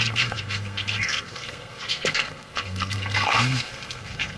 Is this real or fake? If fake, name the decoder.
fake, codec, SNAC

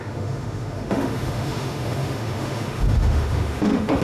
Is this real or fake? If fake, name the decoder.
fake, autoencoder, DAC-VAE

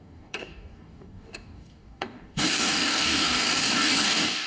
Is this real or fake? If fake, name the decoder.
fake, codec, DAC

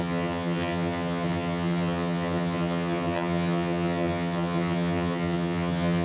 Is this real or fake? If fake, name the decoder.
fake, vocoder, HiFi-GAN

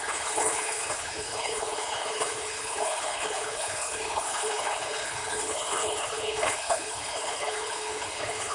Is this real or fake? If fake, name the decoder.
fake, codec, HILCodec